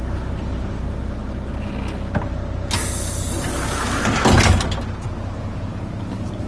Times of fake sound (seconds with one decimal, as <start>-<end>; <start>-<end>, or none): 0.0-1.2; 5.1-6.5